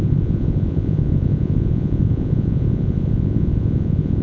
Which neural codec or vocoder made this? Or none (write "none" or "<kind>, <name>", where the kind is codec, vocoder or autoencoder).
vocoder, Vocos